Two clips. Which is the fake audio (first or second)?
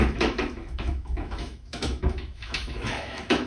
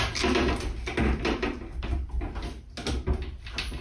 first